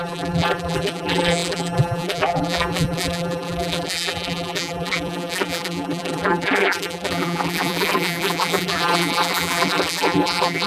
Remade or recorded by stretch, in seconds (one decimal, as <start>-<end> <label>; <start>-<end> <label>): 0.0-10.7 remade